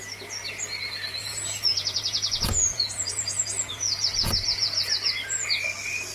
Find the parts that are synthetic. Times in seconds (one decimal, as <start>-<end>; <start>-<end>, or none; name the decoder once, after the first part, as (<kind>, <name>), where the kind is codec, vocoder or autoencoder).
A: 1.2-4.9 (vocoder, Vocos)

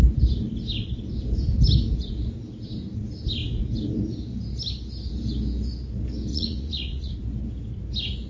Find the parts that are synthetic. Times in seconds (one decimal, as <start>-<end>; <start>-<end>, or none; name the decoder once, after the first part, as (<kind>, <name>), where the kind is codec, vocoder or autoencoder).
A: 6.3-7.2 (vocoder, Vocos)

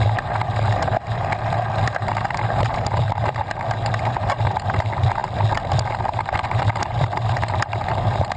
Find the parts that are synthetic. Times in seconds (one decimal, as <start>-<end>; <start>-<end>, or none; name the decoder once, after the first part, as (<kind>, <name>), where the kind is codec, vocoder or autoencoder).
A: 0.0-8.4 (vocoder, BigVGAN v2)

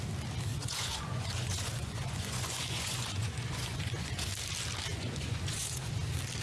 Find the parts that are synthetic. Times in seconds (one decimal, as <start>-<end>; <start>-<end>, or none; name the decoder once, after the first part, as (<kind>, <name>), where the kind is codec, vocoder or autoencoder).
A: 0.5-4.3 (vocoder, Vocos); 4.9-5.9

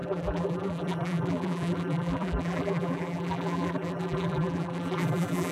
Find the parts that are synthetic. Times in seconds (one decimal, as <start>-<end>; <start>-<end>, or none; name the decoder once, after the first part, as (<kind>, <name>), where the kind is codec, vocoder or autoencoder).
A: 0.0-5.5 (vocoder, BigVGAN v2)

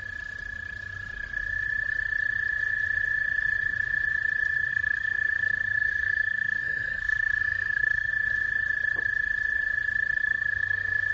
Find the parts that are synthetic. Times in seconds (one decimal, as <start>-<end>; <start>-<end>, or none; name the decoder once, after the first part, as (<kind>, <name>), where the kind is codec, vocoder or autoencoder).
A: 4.7-8.1 (codec, SNAC); 10.2-11.1